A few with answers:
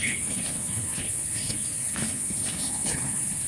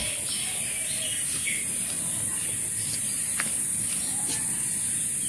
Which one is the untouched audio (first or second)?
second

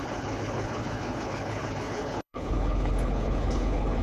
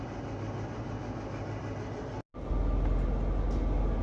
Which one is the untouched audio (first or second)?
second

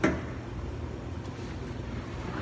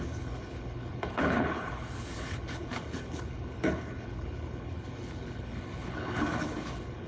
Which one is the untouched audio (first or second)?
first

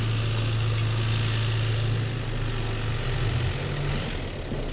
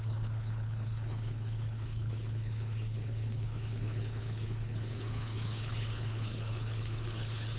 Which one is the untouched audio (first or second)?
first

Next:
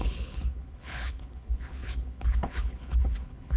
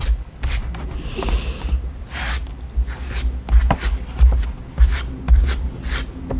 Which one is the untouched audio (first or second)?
second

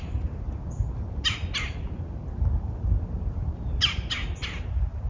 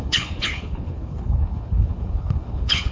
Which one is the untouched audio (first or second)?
first